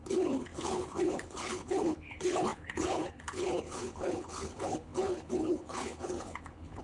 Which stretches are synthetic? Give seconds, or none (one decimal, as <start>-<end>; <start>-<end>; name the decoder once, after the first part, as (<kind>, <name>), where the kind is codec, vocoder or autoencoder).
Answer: 0.0-6.8 (codec, HILCodec)